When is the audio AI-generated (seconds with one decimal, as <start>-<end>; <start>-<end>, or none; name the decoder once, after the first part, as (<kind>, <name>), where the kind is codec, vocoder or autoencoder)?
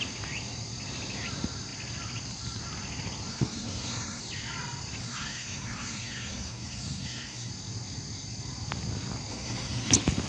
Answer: 3.3-4.2 (codec, SNAC); 5.0-7.5; 9.3-9.9